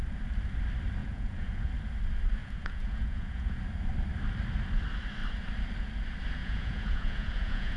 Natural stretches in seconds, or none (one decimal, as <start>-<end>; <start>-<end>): 0.0-1.0; 1.7-2.4; 3.6-6.4